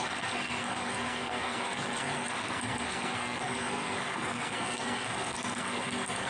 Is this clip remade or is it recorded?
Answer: remade